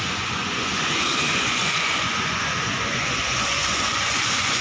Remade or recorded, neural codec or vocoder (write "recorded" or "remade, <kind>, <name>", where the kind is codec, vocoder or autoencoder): remade, vocoder, Vocos